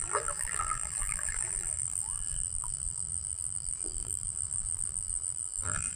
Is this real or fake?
fake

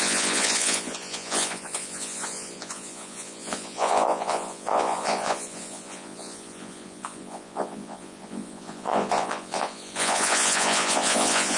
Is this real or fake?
fake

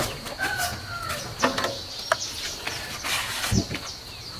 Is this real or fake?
real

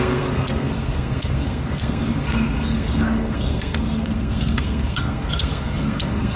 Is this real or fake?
fake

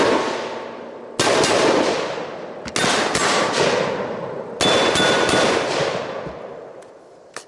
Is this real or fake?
real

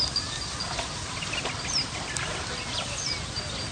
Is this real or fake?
real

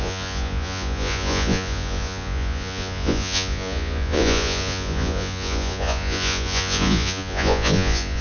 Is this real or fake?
fake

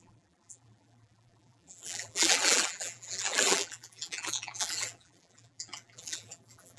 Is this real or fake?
fake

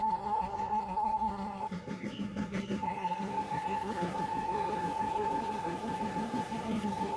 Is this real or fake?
fake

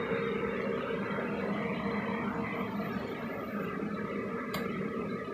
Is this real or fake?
real